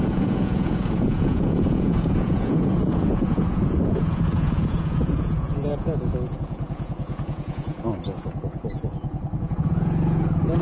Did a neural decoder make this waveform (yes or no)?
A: yes